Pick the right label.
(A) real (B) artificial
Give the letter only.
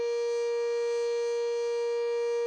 A